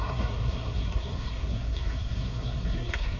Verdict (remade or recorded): remade